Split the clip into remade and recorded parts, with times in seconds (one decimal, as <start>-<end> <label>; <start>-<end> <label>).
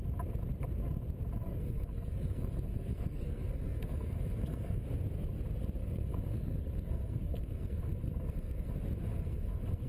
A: 0.0-1.4 recorded; 1.4-4.8 remade; 4.8-5.8 recorded; 5.8-8.7 remade; 8.7-9.1 recorded; 9.1-9.9 remade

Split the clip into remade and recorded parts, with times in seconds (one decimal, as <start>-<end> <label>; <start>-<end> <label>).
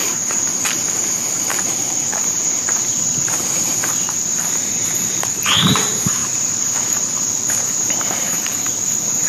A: 0.0-9.3 remade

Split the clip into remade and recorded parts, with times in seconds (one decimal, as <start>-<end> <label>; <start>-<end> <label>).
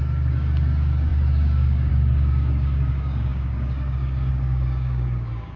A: 0.0-5.6 remade